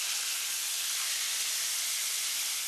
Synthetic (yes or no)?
no